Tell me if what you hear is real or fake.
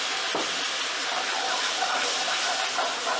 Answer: real